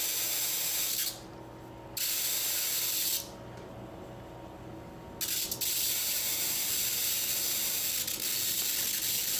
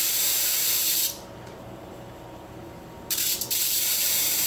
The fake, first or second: second